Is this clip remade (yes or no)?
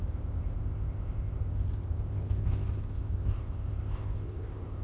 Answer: yes